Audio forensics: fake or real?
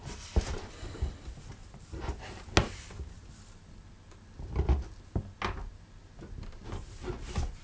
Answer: real